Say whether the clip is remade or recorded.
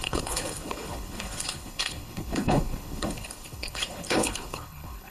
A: remade